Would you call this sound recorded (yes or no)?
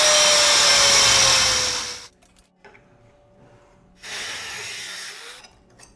yes